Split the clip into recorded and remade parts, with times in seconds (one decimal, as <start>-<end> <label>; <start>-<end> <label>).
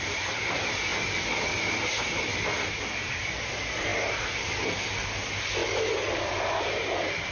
0.0-0.9 remade; 0.9-3.1 recorded; 3.1-5.6 remade; 5.6-6.5 recorded; 6.5-7.3 remade